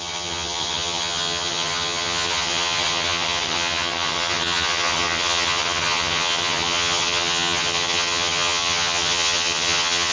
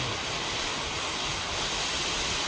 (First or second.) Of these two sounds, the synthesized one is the first